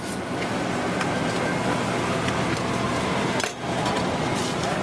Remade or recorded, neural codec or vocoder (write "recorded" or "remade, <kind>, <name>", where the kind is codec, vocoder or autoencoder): recorded